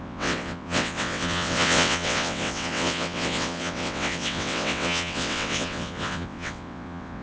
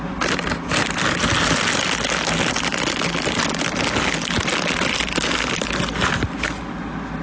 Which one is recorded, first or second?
second